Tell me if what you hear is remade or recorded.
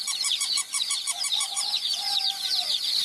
remade